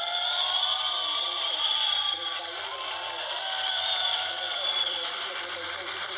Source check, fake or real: fake